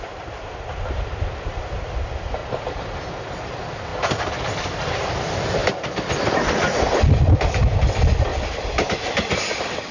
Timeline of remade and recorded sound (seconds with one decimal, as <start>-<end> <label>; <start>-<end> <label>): 0.0-2.4 remade; 2.4-3.5 recorded; 3.5-3.9 remade; 3.9-4.5 recorded; 4.5-5.6 remade; 5.6-7.1 recorded; 7.1-8.3 remade; 8.3-8.9 recorded; 8.9-9.9 remade